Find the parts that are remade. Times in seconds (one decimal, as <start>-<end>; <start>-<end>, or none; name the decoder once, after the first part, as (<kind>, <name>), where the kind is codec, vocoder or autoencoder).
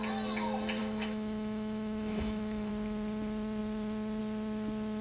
0.8-2.7 (autoencoder, DAC-VAE)